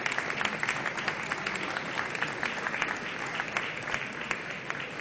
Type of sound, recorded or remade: recorded